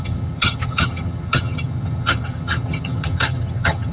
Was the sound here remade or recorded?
remade